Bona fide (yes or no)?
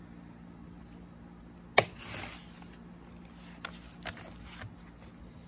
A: yes